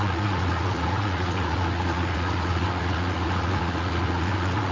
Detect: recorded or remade remade